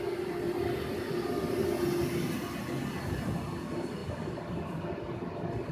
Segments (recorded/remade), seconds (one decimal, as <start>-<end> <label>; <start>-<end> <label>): 0.0-5.7 recorded